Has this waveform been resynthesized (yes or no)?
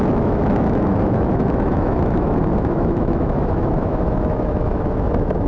yes